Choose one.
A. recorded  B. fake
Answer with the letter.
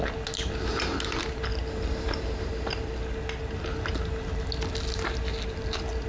A